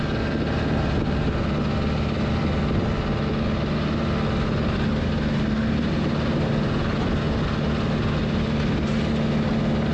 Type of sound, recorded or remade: recorded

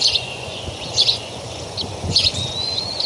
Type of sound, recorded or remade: remade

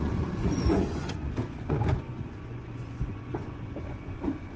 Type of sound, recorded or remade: remade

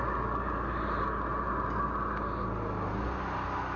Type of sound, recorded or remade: recorded